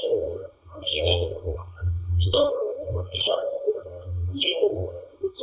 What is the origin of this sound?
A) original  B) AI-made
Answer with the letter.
B